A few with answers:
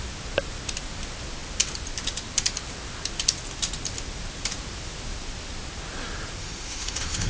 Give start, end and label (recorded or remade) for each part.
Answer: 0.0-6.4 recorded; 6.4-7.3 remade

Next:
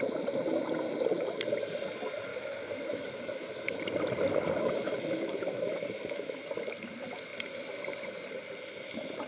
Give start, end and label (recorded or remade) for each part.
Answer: 0.0-2.3 recorded; 2.3-3.8 remade; 3.8-4.3 recorded; 4.3-6.4 remade; 6.4-9.3 recorded

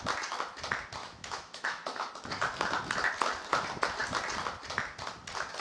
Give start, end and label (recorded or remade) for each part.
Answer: 0.0-1.0 recorded; 1.0-2.1 remade; 2.1-5.6 recorded

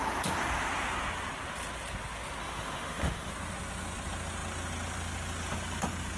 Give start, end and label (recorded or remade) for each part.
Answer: 0.0-2.4 recorded; 2.4-3.3 remade; 3.3-6.2 recorded

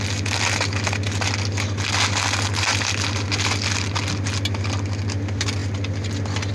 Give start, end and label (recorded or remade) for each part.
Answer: 0.0-6.5 recorded

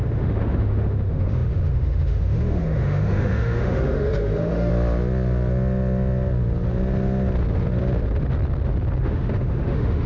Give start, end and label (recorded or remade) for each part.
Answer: 0.0-4.7 remade; 4.7-9.0 recorded; 9.0-10.1 remade

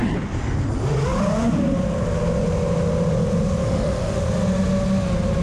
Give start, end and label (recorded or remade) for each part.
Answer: 0.0-3.6 recorded; 3.6-4.2 remade; 4.2-5.4 recorded